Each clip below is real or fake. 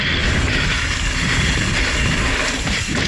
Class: real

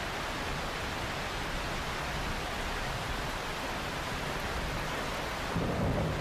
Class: real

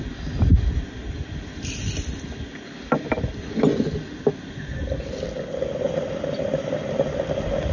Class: real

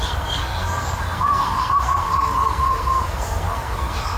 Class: fake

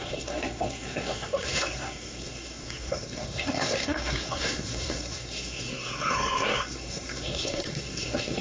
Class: fake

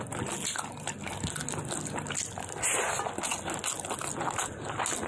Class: real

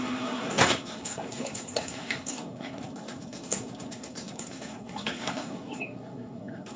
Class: fake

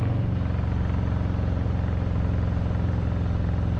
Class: real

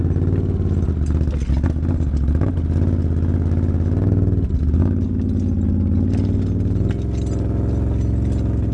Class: real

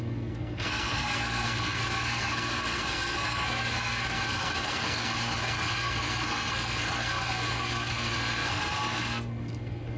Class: fake